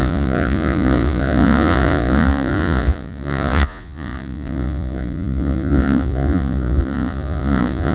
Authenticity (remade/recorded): remade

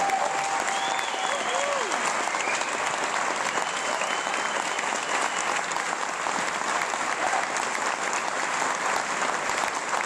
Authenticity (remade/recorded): recorded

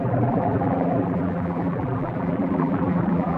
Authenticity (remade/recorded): remade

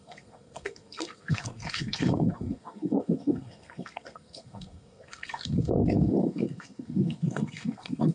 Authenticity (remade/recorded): remade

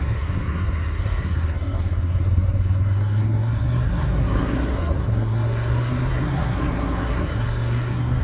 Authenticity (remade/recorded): remade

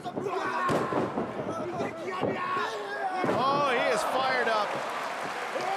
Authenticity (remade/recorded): recorded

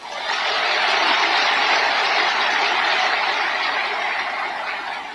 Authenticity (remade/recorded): recorded